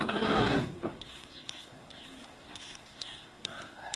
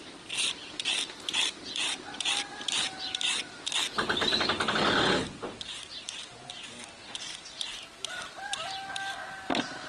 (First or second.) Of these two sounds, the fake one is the first